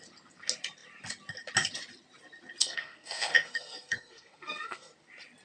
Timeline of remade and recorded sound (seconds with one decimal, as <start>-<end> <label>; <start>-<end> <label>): 0.0-2.6 recorded; 2.6-4.9 remade; 4.9-5.4 recorded